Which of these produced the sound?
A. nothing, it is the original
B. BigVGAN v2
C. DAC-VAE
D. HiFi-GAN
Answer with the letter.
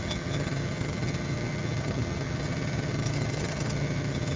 D